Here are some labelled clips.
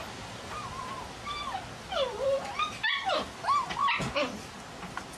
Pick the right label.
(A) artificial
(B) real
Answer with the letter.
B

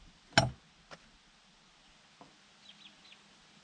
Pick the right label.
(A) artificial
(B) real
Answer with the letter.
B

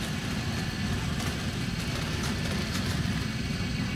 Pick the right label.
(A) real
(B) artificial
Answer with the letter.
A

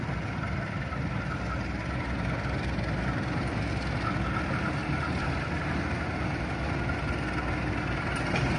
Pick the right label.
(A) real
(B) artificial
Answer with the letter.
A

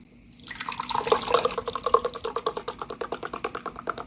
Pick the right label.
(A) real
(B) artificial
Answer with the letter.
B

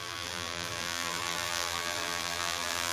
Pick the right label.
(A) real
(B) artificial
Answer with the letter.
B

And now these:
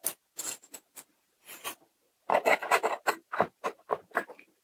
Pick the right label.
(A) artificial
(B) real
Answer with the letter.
B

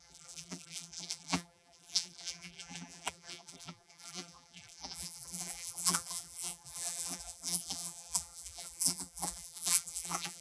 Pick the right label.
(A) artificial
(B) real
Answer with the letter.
A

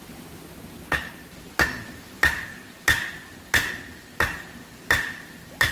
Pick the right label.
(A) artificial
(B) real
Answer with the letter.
B